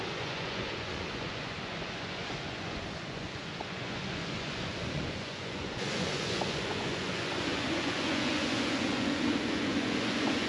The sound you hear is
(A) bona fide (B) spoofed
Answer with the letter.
B